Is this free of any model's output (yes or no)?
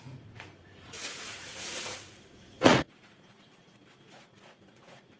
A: no